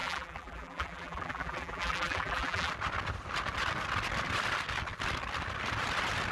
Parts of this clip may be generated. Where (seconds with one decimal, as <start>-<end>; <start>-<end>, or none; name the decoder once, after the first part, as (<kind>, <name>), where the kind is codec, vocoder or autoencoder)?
0.0-2.7 (vocoder, BigVGAN v2)